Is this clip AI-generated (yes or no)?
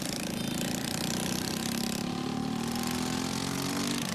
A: no